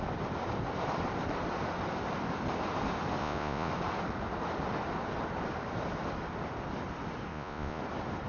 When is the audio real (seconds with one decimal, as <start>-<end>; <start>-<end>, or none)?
0.0-3.2; 3.7-7.3; 7.8-8.3

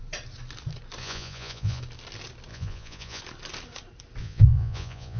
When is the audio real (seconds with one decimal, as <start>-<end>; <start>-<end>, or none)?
0.0-1.0; 1.8-2.5; 3.2-4.2

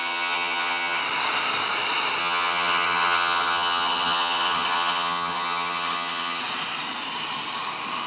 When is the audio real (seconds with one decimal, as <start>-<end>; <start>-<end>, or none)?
1.0-2.2; 6.4-8.1

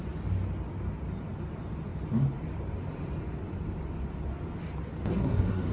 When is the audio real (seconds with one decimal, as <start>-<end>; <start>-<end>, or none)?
0.0-5.1

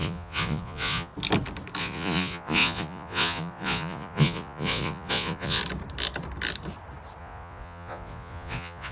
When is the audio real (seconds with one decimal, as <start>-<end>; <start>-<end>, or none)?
1.1-1.8; 5.6-7.2

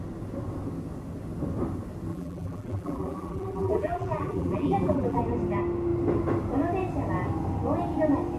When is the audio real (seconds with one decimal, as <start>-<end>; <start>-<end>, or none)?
0.0-2.1; 5.2-8.4

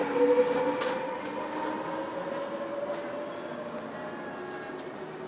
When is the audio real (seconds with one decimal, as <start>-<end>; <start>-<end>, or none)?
0.0-5.3

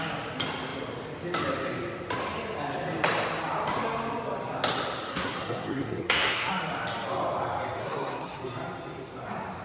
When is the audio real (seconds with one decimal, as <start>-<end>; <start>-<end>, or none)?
0.0-5.1; 6.5-7.8; 8.4-9.6